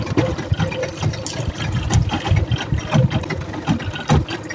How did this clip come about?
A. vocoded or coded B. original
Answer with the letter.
B